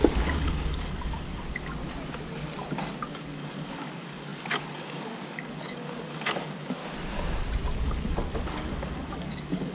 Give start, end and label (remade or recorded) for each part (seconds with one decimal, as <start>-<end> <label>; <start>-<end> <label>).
0.0-1.8 remade; 1.8-3.0 recorded; 3.0-6.8 remade; 6.8-7.8 recorded; 7.8-9.7 remade